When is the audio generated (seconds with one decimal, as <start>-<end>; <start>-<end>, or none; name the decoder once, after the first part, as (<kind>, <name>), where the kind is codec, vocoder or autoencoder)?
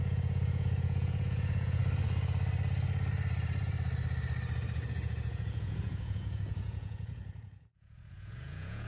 0.0-1.8 (vocoder, Vocos); 4.9-8.9